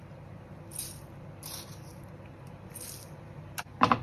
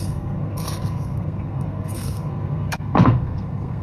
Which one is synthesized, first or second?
second